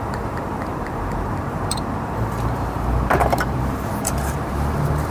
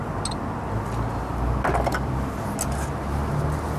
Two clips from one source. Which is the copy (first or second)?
first